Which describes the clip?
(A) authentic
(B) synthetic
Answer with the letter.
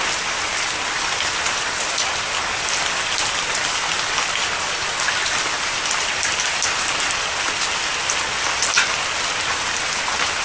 A